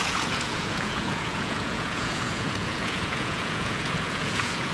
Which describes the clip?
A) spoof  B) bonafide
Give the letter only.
A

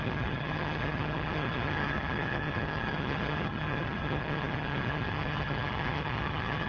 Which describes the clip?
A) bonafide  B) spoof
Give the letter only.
B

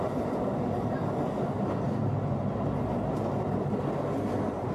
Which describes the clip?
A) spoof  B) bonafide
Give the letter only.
B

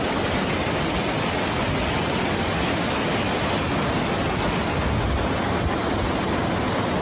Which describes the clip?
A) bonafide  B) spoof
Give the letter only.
A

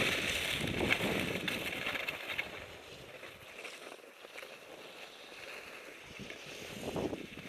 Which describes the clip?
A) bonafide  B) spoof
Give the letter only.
A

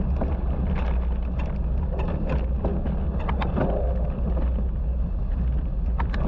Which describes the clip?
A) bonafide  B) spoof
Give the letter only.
A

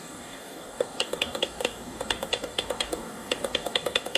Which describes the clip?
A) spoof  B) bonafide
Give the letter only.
A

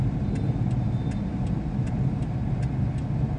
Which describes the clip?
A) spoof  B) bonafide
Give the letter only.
B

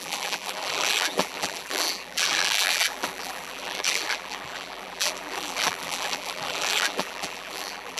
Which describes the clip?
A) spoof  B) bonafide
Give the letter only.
A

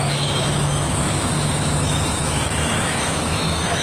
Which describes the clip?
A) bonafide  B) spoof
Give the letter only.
B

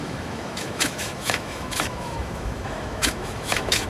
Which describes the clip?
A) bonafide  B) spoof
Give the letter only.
B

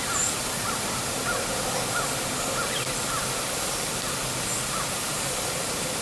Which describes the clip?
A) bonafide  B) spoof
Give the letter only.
B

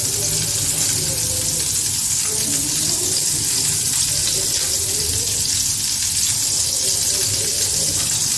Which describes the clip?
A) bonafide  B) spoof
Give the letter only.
A